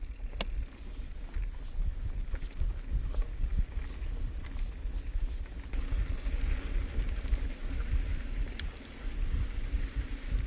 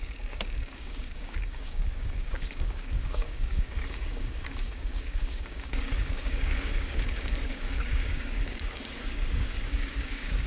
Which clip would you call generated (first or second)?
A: second